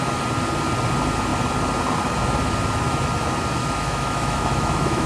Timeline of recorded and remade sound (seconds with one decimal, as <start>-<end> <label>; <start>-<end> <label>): 0.0-3.6 recorded; 3.6-5.1 remade